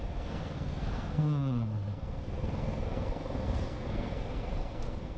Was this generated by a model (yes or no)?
yes